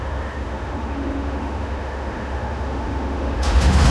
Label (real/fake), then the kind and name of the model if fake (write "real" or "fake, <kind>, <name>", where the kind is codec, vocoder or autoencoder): fake, autoencoder, DAC-VAE